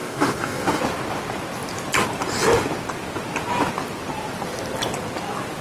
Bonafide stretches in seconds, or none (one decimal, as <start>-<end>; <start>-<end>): 0.8-5.6